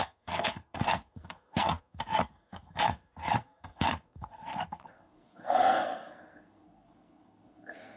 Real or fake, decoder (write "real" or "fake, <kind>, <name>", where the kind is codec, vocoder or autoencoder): fake, codec, SNAC